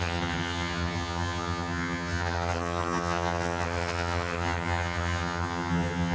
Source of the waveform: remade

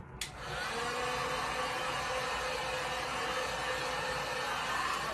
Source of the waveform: recorded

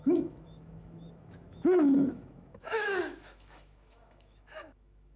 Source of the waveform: remade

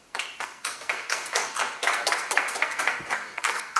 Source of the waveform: remade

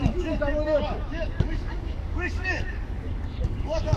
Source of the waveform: remade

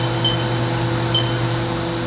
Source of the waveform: recorded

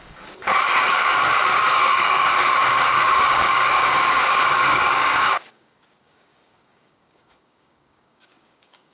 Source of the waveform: remade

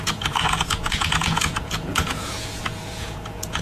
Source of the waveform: remade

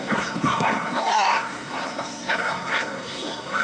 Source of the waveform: remade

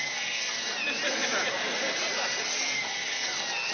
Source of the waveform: recorded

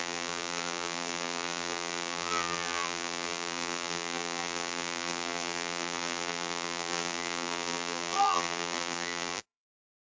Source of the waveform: remade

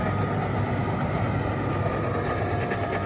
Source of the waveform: recorded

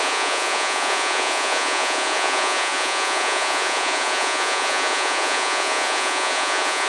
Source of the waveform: remade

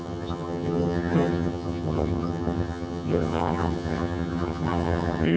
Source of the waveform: remade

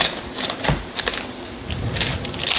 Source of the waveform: remade